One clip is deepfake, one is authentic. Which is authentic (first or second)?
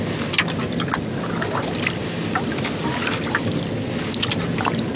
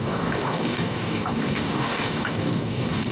first